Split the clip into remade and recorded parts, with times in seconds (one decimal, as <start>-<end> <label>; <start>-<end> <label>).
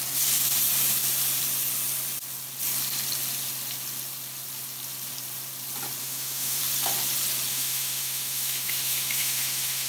0.0-6.0 recorded; 6.0-6.6 remade; 6.6-7.5 recorded; 7.5-9.9 remade